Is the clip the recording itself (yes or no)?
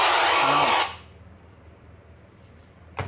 yes